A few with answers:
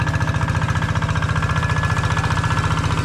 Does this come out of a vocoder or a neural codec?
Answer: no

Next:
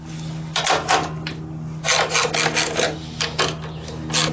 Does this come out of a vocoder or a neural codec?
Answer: no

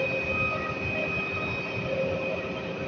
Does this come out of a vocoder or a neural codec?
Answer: no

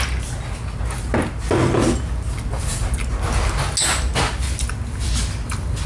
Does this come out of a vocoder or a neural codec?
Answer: no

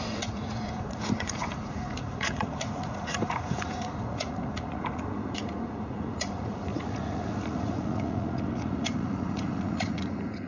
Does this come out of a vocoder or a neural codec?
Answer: yes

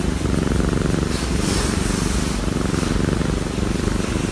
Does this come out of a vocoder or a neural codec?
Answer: no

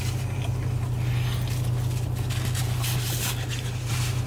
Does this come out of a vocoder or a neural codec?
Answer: no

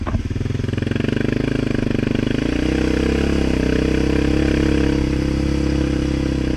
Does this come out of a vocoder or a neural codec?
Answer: no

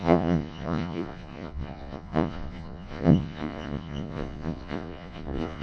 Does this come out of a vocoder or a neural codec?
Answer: yes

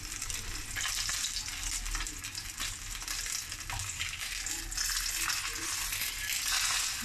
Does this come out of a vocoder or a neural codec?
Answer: no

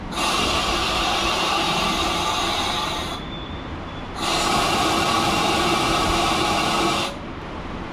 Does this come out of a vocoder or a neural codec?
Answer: yes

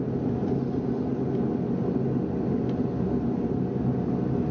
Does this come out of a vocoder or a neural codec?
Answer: no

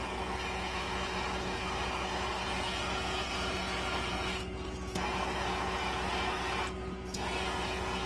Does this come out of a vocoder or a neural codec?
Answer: yes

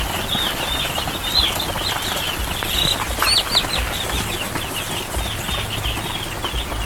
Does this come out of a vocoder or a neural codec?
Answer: no